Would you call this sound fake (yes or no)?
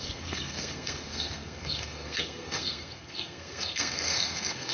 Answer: yes